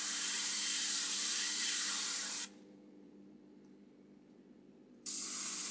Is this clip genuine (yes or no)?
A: no